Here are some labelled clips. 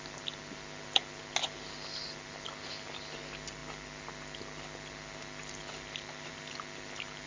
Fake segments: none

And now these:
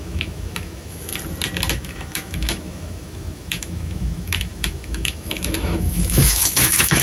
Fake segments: 0.0-1.1 (autoencoder, DAC-VAE); 1.7-7.0

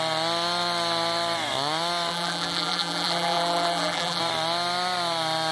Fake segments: 2.1-4.2 (vocoder, BigVGAN v2)

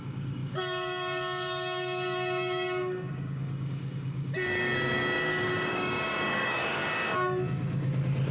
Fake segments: 0.0-6.8 (codec, DAC)

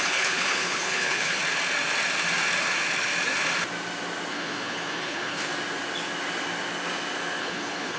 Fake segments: 0.0-1.4 (codec, HILCodec); 4.3-5.5; 7.4-8.0

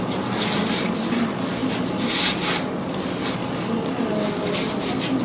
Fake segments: none

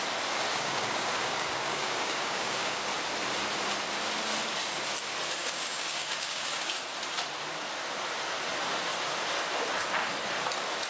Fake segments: 0.5-2.8 (codec, DAC); 5.4-6.7